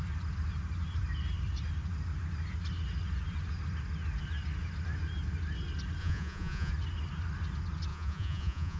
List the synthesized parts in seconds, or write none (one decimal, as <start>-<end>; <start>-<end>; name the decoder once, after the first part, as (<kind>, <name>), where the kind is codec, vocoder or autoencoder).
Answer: 6.0-6.7 (vocoder, Vocos); 7.9-8.8